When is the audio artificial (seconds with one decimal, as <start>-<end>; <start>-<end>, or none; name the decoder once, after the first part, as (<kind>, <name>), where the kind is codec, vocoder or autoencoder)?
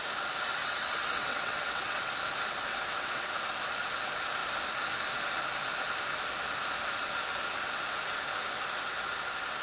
0.6-2.1 (vocoder, WaveNeXt); 2.7-3.3